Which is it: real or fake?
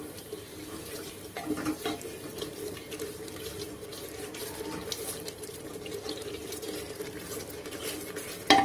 fake